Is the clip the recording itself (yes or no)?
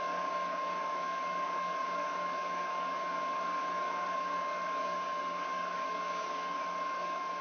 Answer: no